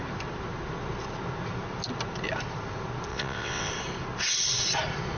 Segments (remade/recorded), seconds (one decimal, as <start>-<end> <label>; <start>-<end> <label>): 0.0-3.1 recorded; 3.1-3.7 remade; 3.7-5.2 recorded